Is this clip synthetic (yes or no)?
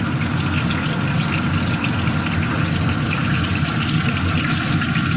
no